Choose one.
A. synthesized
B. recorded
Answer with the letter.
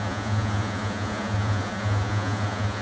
A